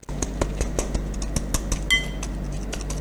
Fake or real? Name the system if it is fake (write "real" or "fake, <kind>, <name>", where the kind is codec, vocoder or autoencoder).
real